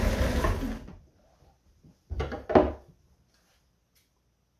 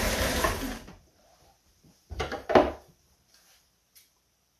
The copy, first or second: second